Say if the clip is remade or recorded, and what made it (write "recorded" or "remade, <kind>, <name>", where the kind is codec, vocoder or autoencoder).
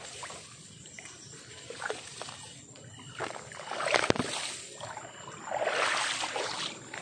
recorded